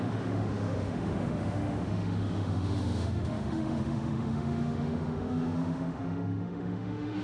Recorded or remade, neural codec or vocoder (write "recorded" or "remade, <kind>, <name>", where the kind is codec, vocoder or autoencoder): remade, autoencoder, DAC-VAE